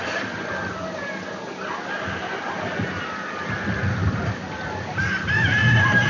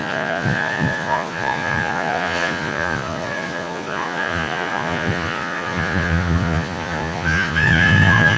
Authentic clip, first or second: first